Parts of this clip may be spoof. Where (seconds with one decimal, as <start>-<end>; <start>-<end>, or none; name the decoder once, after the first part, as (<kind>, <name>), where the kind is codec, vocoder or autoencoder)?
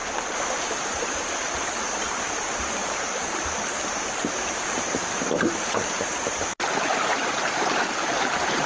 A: 0.0-8.7 (vocoder, BigVGAN v2)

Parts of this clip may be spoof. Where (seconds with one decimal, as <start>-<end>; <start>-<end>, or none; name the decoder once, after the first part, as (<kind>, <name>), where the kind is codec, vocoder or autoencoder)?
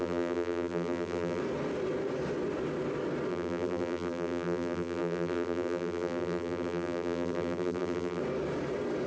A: 0.0-1.4 (vocoder, BigVGAN v2); 3.3-8.2